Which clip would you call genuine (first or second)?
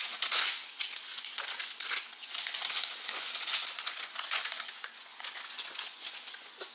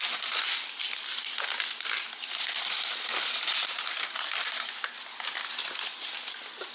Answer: second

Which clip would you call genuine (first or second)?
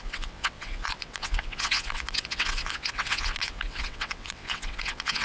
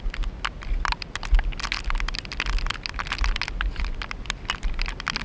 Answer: second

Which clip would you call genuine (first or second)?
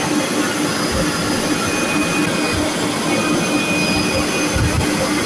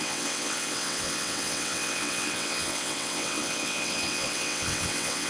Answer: first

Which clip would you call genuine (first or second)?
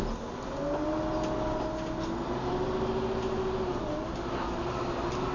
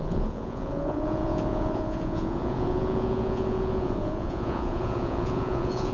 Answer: first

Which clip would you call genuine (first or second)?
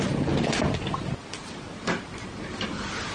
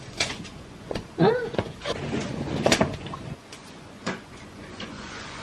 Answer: first